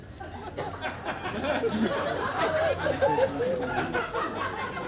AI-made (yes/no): no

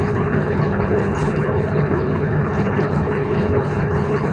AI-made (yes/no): yes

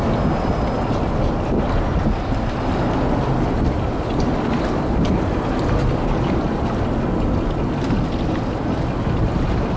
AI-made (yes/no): no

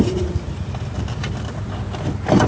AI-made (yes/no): no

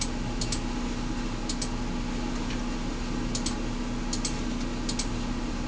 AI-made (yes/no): no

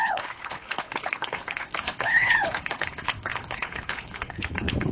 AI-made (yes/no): yes